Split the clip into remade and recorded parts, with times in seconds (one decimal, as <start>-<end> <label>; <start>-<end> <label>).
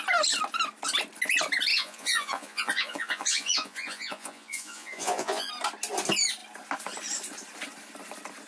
0.0-1.7 recorded; 1.7-5.5 remade; 5.5-8.5 recorded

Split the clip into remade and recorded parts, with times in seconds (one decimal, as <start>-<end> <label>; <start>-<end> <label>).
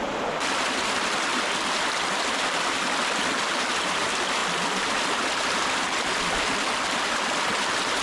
0.0-8.0 recorded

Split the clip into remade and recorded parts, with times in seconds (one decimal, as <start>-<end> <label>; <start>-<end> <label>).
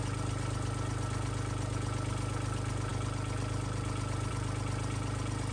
0.0-5.5 recorded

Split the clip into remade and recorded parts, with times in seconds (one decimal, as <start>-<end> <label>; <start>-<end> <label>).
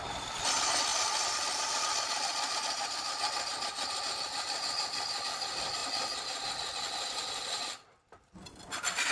0.0-9.1 recorded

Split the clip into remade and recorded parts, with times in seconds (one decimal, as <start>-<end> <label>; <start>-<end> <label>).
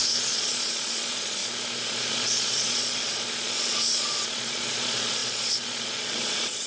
0.0-1.4 remade; 1.4-1.9 recorded; 1.9-6.7 remade